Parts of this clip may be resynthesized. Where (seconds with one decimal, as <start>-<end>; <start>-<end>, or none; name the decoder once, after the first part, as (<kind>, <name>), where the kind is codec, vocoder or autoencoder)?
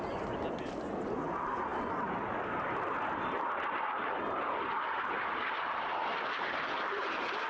none